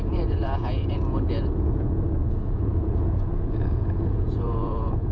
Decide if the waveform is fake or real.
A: fake